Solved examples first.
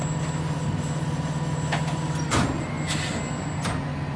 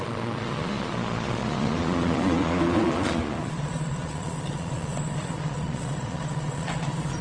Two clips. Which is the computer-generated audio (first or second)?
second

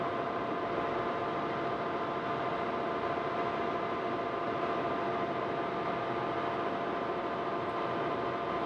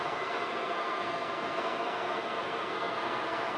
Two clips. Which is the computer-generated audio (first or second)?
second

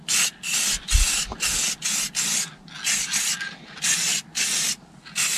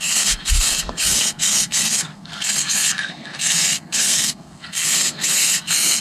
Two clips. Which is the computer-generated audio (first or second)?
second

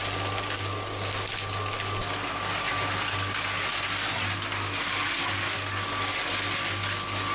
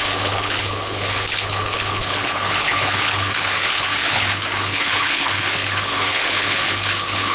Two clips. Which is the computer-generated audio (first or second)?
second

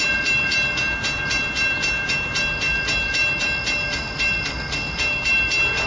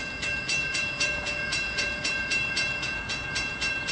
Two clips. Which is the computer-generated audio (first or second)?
second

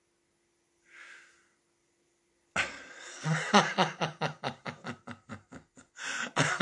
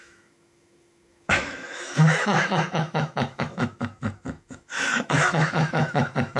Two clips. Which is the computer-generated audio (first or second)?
second